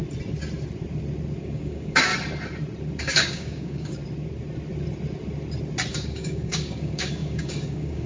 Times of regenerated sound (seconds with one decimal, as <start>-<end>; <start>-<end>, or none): 1.4-2.1; 3.0-4.0; 5.9-8.1